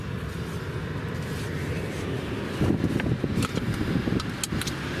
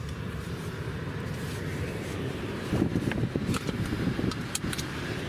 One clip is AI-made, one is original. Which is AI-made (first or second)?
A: second